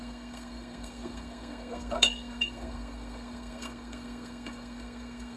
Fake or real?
fake